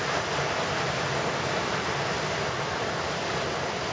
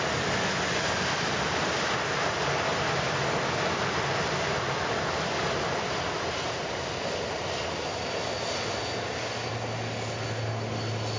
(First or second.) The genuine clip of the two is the second